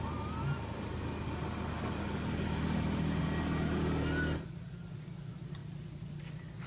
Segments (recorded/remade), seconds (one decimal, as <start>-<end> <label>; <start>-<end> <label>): 0.0-5.6 recorded; 5.6-6.3 remade; 6.3-6.7 recorded